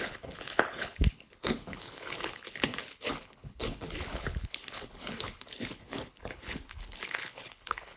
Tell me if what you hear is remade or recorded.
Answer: remade